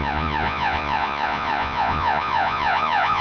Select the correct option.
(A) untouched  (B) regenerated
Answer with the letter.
B